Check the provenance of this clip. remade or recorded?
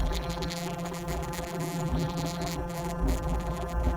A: remade